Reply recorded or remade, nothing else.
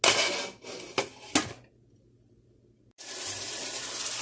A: recorded